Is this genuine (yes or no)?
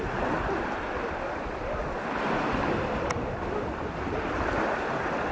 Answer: no